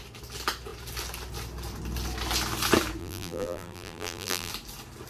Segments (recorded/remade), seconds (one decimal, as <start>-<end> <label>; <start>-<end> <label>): 0.0-3.0 recorded; 3.0-4.5 remade; 4.5-5.1 recorded